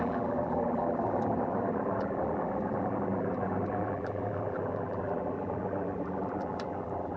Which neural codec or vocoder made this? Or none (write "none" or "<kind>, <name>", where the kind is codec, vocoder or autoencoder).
vocoder, BigVGAN v2